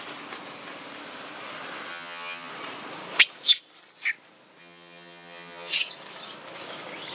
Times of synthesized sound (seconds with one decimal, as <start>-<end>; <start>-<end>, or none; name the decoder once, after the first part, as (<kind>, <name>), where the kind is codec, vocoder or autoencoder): 1.9-2.5 (vocoder, HiFi-GAN); 4.6-5.7